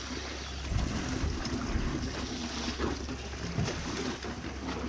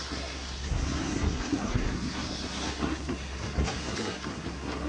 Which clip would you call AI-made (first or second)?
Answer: second